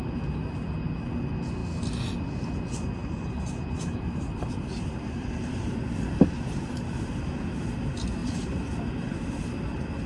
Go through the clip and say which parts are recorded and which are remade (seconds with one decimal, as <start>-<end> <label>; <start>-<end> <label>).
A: 0.0-3.0 recorded; 3.0-7.8 remade; 7.8-8.2 recorded; 8.2-8.8 remade; 8.8-10.1 recorded